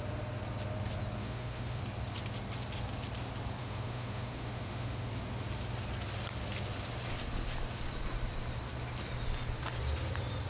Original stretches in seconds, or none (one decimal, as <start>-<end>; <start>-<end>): 0.0-1.2; 1.8-3.6; 5.1-10.5